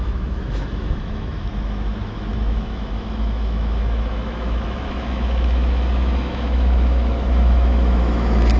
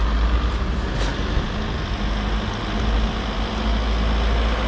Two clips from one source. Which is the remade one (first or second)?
first